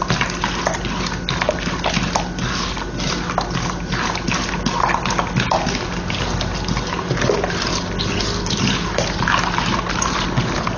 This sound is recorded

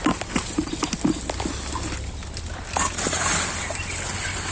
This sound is recorded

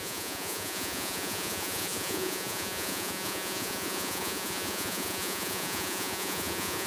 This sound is remade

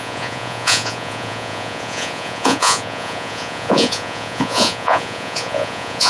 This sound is remade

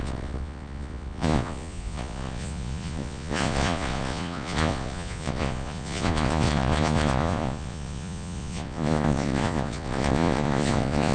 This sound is remade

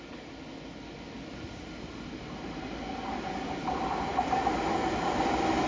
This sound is recorded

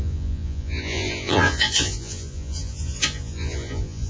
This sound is remade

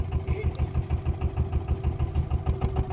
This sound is recorded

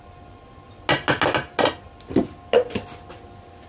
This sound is recorded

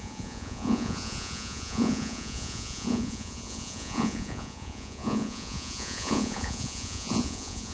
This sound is remade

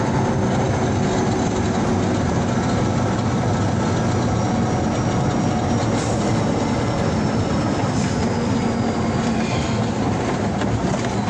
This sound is recorded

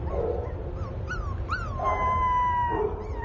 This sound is recorded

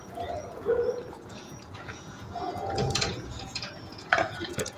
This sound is remade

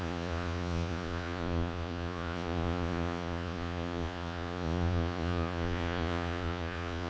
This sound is remade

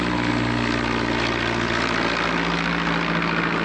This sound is recorded